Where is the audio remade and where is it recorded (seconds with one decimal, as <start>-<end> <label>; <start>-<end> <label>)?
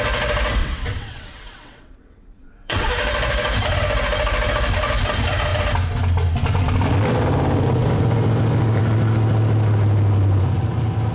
0.0-0.6 recorded; 0.6-2.9 remade; 2.9-11.1 recorded